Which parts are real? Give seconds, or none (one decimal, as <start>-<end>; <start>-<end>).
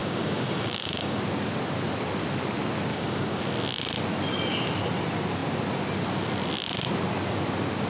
1.2-2.9; 3.4-7.9